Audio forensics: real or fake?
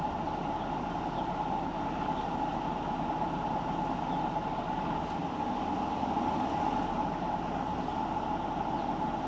real